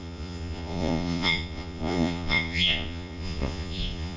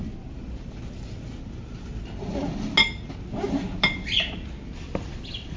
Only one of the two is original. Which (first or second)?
second